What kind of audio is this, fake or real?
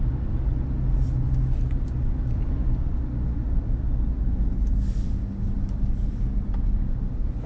real